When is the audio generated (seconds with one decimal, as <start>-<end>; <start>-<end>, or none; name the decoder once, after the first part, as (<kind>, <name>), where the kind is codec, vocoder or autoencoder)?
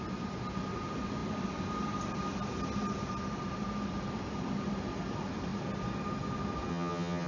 6.7-7.3 (vocoder, HiFi-GAN)